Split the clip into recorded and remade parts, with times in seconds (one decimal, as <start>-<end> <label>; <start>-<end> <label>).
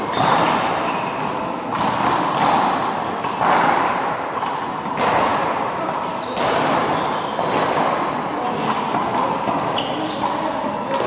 0.0-11.1 recorded